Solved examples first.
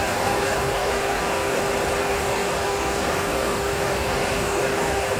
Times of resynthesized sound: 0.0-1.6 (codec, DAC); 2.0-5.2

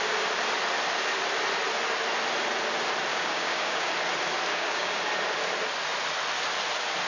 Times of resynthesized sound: 3.1-3.9 (codec, DAC); 4.5-5.0

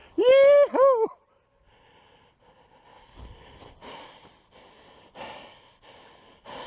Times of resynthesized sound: none

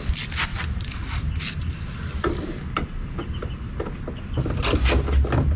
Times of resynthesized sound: none

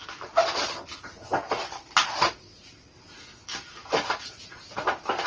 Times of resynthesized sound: none

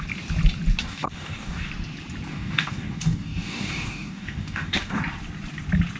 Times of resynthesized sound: 0.8-1.7 (codec, DAC); 2.3-5.0